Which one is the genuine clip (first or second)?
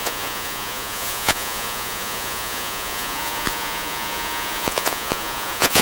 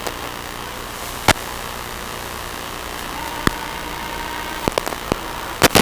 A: second